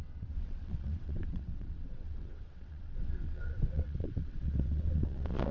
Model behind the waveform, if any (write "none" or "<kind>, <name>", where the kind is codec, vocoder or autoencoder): vocoder, WaveNeXt